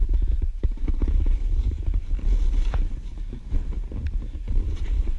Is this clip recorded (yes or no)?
yes